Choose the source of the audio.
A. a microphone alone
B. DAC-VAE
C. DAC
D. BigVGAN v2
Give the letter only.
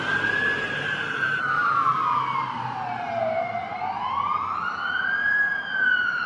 D